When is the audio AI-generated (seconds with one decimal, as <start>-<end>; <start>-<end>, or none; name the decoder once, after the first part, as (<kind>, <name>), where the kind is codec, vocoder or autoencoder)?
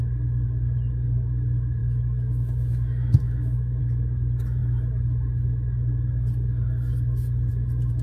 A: 1.8-3.8 (autoencoder, DAC-VAE)